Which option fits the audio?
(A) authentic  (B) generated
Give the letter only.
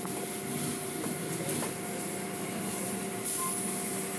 A